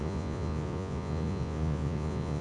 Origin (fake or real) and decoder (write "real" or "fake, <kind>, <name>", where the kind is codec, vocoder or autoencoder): fake, vocoder, Vocos